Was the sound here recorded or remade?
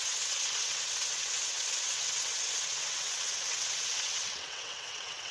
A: remade